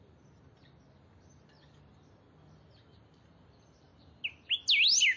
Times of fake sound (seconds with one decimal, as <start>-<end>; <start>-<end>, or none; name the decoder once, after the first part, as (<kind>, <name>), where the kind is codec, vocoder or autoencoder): none